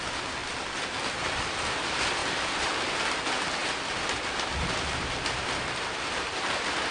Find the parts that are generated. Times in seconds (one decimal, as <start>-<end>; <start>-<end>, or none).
none